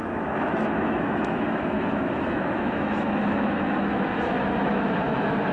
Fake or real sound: fake